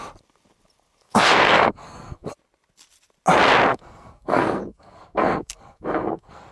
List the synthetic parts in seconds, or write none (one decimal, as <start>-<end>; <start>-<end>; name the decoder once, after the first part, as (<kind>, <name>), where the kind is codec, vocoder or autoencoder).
1.0-2.3 (codec, SNAC); 3.7-6.5